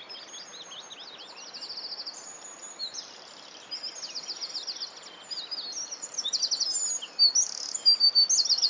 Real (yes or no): yes